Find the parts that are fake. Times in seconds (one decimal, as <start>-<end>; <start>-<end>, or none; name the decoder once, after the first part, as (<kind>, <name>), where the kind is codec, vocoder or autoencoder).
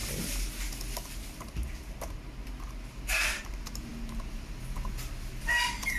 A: none